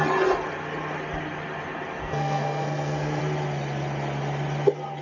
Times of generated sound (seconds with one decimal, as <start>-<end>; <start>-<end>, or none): 2.0-3.2